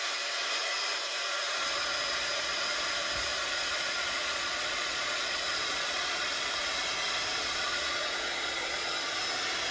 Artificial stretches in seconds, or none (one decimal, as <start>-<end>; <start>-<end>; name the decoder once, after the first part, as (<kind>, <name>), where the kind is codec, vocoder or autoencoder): 3.4-6.7 (vocoder, Vocos); 7.3-8.9